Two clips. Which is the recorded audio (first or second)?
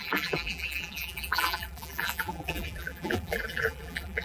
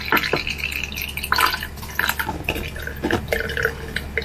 second